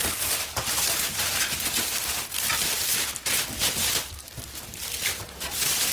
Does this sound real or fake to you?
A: real